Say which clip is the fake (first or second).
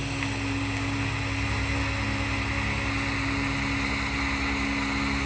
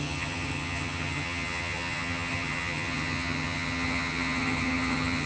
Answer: second